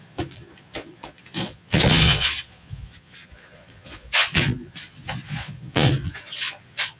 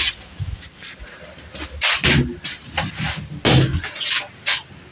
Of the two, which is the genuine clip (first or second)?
second